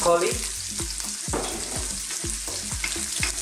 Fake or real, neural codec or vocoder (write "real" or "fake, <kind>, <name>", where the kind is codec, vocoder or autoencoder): real